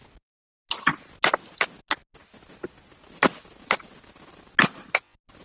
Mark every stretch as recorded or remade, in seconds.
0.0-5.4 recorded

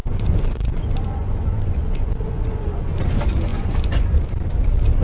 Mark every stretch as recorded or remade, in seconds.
0.0-3.0 remade; 3.0-3.5 recorded; 3.5-4.2 remade; 4.2-5.0 recorded

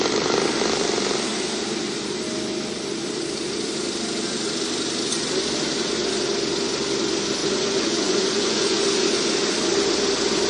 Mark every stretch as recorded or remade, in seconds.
0.0-7.4 recorded; 7.4-8.8 remade; 8.8-10.5 recorded

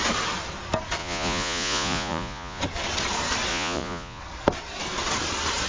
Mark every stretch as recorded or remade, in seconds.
0.0-1.0 recorded; 1.0-2.6 remade; 2.6-3.5 recorded; 3.5-4.2 remade; 4.2-5.7 recorded

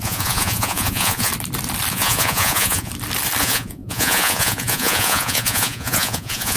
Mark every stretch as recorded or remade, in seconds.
0.0-1.3 remade; 1.3-1.9 recorded; 1.9-2.9 remade; 2.9-3.4 recorded; 3.4-6.6 remade

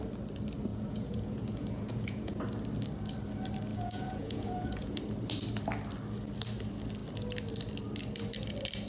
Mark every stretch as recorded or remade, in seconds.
0.0-0.7 recorded; 0.7-2.4 remade; 2.4-3.7 recorded; 3.7-5.0 remade; 5.0-8.9 recorded